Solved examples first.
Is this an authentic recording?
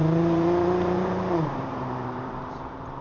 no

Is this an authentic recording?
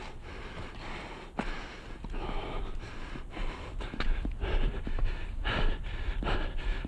yes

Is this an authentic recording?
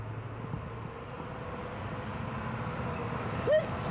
yes